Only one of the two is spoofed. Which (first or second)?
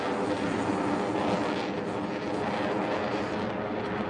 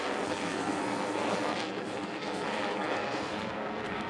second